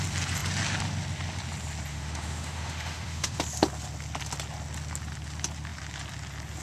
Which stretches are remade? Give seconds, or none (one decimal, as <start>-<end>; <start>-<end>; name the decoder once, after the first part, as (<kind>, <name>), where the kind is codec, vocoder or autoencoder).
1.9-3.4 (autoencoder, DAC-VAE)